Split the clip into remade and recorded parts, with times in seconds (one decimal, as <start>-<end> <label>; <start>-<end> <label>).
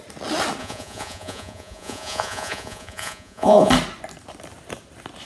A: 0.0-0.6 recorded; 0.6-3.7 remade; 3.7-5.2 recorded